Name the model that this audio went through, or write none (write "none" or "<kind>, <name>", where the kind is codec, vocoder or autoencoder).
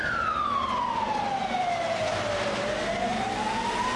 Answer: none